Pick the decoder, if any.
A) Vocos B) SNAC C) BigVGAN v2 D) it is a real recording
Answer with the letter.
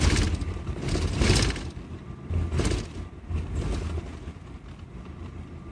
D